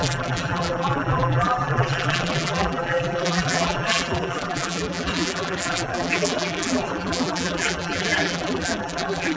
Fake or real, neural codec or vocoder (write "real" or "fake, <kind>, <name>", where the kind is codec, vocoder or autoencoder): fake, vocoder, BigVGAN v2